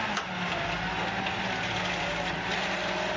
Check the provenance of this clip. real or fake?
real